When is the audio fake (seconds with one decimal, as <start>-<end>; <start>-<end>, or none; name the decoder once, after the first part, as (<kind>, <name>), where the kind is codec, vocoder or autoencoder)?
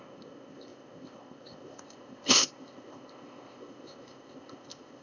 0.0-5.0 (codec, ZipCodec)